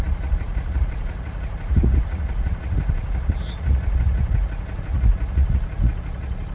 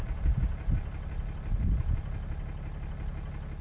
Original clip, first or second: second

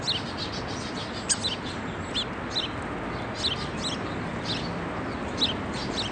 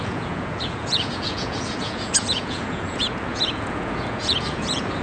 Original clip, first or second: first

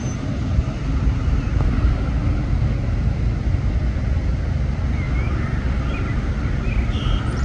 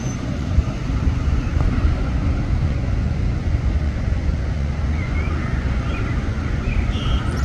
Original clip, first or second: first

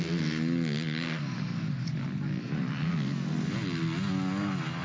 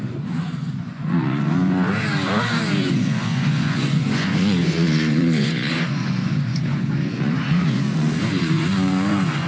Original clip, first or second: first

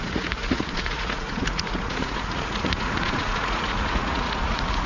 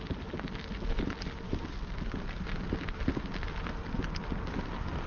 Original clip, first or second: second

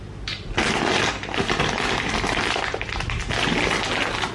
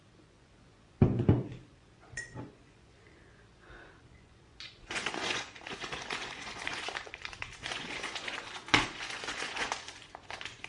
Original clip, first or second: first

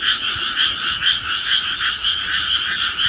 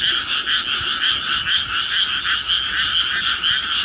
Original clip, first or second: second